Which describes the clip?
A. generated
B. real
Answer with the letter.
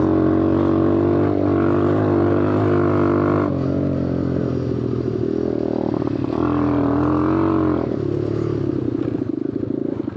B